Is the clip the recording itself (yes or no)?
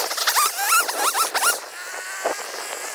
yes